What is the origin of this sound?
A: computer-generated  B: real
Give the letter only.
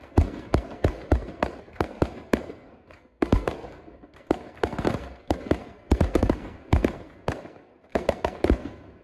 A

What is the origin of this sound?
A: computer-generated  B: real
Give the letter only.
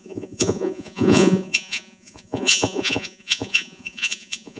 A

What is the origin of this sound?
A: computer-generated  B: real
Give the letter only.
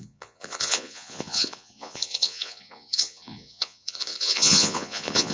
A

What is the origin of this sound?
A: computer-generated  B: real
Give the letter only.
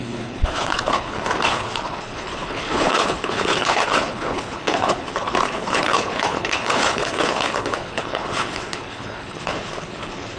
A